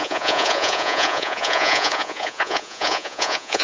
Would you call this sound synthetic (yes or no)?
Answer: yes